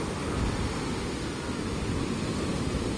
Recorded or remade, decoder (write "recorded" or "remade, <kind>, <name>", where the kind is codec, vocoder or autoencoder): recorded